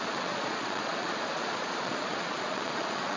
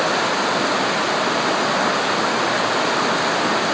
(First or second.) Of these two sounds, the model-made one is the first